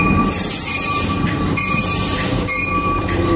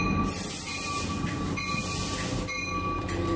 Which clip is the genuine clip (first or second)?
second